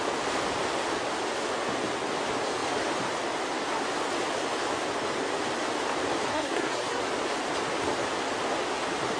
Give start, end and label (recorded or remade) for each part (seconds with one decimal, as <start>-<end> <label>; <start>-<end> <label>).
0.0-6.3 recorded; 6.3-7.0 remade; 7.0-9.2 recorded